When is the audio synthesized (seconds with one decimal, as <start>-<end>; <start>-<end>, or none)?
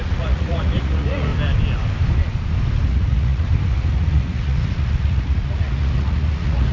0.0-1.3; 2.9-6.7